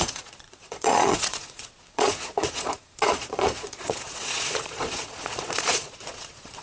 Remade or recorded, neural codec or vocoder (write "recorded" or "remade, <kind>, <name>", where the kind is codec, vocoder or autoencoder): remade, vocoder, Vocos